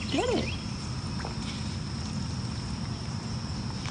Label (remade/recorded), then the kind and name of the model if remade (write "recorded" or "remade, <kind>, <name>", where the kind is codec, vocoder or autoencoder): recorded